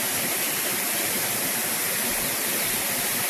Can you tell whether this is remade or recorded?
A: recorded